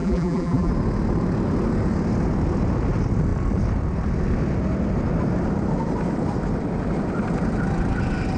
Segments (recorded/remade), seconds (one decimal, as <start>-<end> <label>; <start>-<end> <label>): 0.0-0.7 remade; 0.7-8.4 recorded